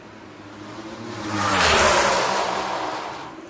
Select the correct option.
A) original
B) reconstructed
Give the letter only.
B